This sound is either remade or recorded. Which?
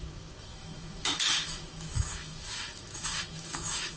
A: remade